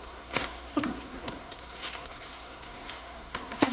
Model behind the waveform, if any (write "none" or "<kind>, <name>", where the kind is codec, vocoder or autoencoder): codec, SNAC